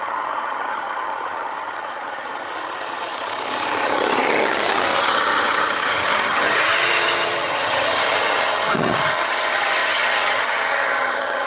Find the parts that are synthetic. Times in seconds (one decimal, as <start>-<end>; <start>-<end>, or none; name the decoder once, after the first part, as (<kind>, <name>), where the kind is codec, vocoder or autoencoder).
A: 0.0-11.5 (vocoder, HiFi-GAN)